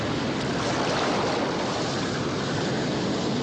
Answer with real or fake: real